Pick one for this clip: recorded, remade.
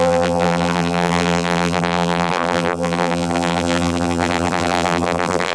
remade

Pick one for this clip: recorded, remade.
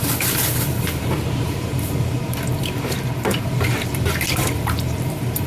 remade